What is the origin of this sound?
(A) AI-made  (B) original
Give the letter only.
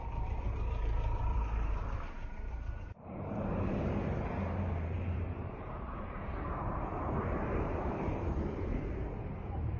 A